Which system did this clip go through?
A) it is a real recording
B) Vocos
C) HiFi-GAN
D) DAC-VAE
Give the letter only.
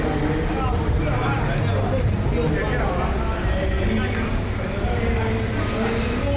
A